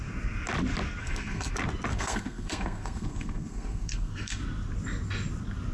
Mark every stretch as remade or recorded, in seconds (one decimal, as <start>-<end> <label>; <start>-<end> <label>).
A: 0.0-1.0 recorded; 1.0-1.5 remade; 1.5-1.9 recorded; 1.9-4.4 remade; 4.4-5.7 recorded